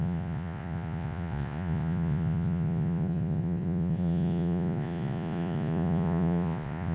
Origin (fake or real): fake